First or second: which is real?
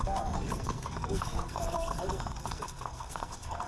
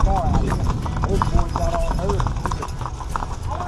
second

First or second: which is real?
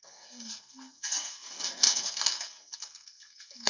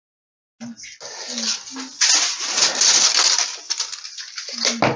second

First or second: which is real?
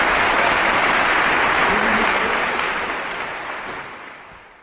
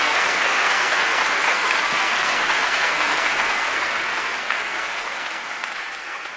first